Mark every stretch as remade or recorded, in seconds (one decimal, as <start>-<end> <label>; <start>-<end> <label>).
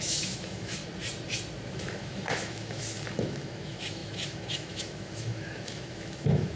0.0-0.8 remade; 0.8-1.8 recorded; 1.8-6.6 remade